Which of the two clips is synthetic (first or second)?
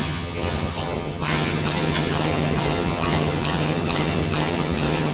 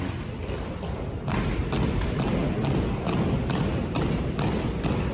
first